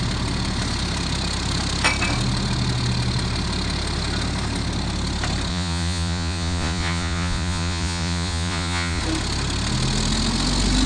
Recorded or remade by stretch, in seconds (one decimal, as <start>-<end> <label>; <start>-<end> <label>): 0.0-5.5 recorded; 5.5-9.0 remade; 9.0-10.9 recorded